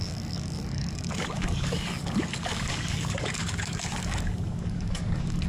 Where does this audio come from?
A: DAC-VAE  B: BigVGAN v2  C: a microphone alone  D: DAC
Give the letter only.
D